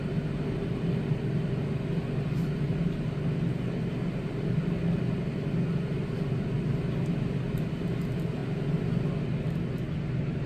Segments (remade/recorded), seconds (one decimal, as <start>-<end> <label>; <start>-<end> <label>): 0.0-10.5 recorded